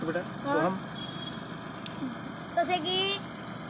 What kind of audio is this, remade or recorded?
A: recorded